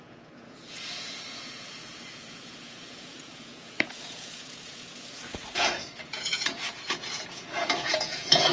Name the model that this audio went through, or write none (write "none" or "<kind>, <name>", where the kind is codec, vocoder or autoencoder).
vocoder, Vocos